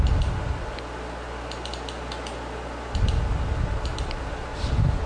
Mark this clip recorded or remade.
recorded